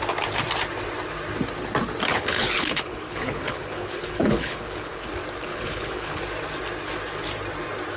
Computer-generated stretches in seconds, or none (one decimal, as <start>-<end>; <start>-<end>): 2.1-5.1; 5.5-6.2